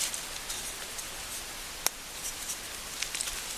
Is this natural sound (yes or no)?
no